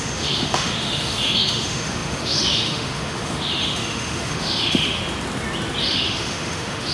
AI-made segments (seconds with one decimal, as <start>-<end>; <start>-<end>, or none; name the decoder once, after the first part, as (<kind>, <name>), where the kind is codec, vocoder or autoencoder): 0.0-5.0 (autoencoder, DAC-VAE); 5.8-6.9